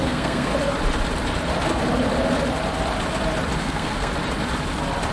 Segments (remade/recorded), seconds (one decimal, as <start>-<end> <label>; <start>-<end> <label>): 0.0-0.5 remade; 0.5-3.6 recorded; 3.6-4.1 remade; 4.1-5.1 recorded